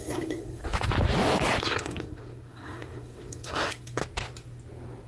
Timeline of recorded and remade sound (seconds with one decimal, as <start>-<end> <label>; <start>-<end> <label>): 0.0-0.6 remade; 0.6-1.6 recorded; 1.6-4.0 remade; 4.0-5.1 recorded